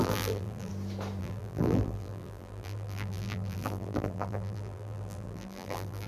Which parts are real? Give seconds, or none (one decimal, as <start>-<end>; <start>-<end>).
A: 0.7-1.2